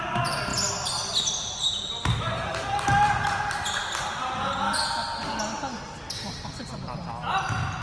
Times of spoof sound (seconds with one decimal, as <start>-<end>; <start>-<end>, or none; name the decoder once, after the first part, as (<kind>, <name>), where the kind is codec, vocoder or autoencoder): none